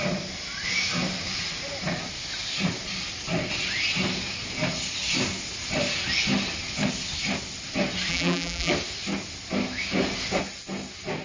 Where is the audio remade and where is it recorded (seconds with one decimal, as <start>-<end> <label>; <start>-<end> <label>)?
0.0-8.1 recorded; 8.1-8.7 remade; 8.7-11.2 recorded